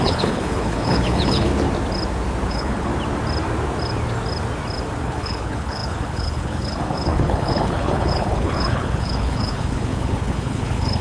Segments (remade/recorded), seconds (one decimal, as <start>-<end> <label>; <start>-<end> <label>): 0.0-1.5 remade; 1.5-2.5 recorded; 2.5-2.9 remade; 2.9-5.0 recorded; 5.0-11.0 remade